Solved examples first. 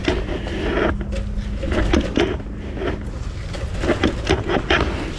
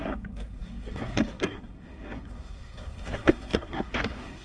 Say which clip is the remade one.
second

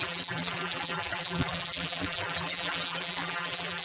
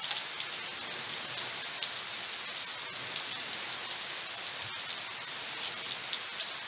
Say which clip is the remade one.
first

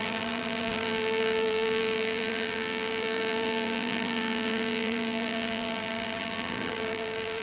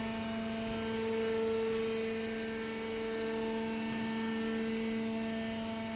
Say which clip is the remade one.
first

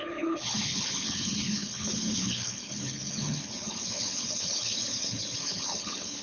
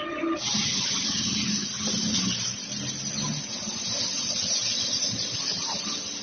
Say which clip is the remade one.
first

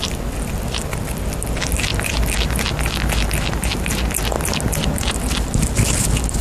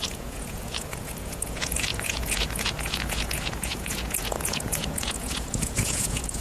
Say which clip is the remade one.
second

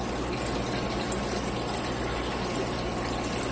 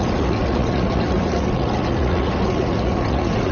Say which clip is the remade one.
second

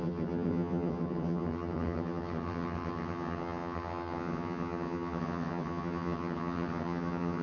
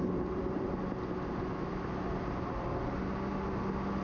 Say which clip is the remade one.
first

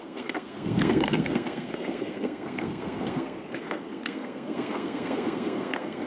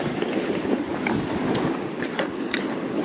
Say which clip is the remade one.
first